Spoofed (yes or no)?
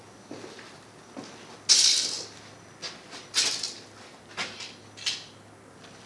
no